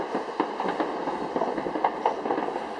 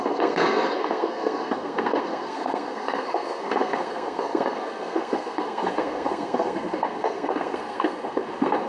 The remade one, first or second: second